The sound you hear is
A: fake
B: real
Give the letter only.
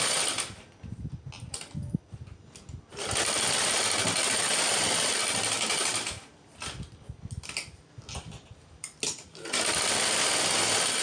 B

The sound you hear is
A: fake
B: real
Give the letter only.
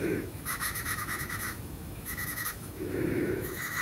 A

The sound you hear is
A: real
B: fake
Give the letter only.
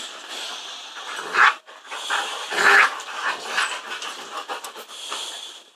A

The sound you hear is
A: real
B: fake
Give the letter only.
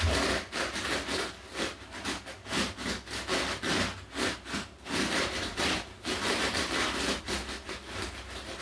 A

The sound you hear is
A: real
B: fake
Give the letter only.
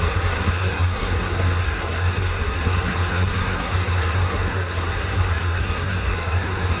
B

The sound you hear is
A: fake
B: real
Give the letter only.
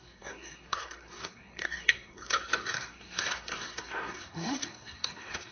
A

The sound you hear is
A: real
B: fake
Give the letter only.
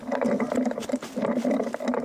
A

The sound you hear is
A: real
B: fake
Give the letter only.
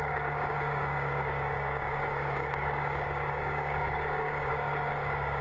B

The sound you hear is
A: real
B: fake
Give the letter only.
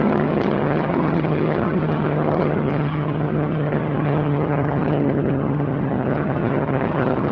B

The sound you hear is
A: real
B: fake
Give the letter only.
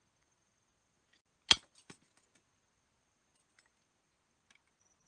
A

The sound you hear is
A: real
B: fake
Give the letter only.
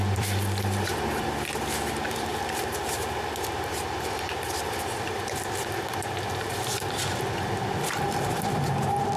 B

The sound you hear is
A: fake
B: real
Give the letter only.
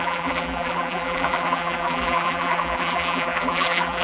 A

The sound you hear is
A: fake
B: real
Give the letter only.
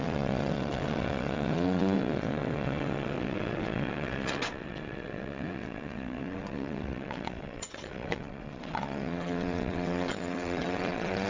A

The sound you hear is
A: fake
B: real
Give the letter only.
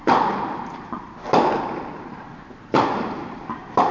B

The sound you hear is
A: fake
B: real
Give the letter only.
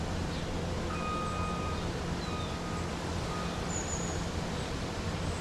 B